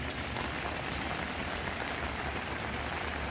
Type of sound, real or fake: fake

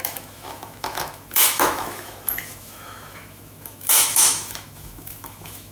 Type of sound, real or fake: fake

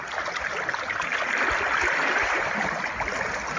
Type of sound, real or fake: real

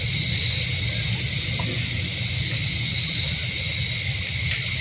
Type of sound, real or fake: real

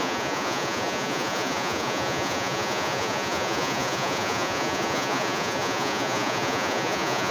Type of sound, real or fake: fake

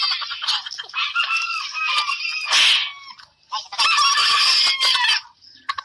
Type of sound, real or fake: real